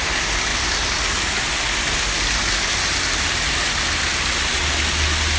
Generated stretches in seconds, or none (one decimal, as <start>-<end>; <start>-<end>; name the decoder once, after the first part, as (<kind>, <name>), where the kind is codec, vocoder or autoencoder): none